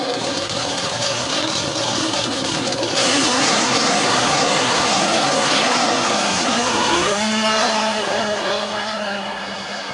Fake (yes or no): yes